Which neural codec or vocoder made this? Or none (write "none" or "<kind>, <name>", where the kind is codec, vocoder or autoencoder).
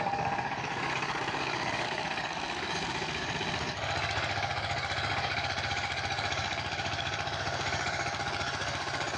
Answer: codec, DAC